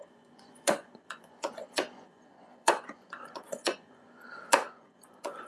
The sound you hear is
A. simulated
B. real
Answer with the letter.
A